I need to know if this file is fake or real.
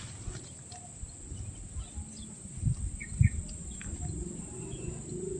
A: real